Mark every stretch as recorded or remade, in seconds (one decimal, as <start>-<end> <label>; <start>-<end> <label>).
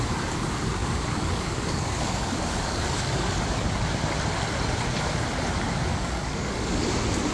0.0-0.8 recorded; 0.8-3.4 remade; 3.4-5.9 recorded; 5.9-6.8 remade; 6.8-7.3 recorded